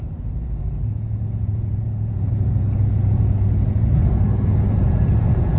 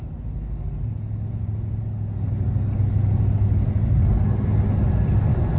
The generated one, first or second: first